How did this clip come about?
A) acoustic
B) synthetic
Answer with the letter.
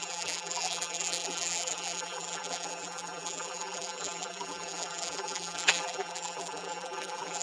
B